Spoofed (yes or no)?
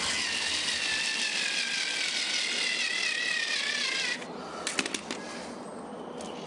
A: no